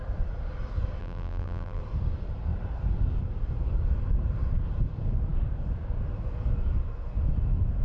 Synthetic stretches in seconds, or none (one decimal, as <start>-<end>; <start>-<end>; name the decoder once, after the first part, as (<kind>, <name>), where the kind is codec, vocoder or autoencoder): 1.0-1.8 (vocoder, BigVGAN v2)